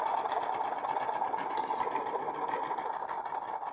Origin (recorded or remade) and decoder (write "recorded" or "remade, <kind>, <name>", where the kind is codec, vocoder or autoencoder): recorded